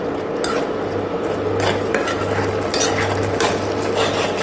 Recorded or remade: recorded